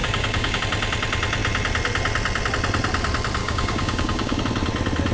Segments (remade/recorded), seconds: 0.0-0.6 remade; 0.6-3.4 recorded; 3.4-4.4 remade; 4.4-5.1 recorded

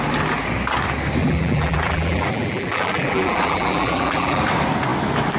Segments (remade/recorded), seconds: 0.0-1.2 recorded; 1.2-4.4 remade; 4.4-5.4 recorded